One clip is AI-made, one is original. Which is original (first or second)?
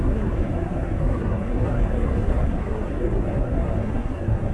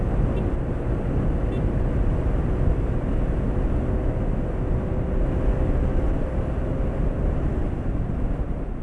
second